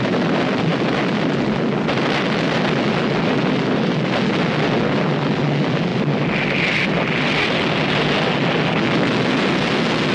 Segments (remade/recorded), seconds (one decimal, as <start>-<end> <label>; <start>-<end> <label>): 0.0-10.1 recorded